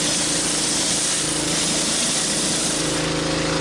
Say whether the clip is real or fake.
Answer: real